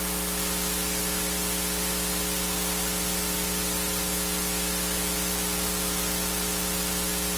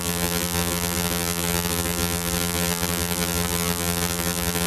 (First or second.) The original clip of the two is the first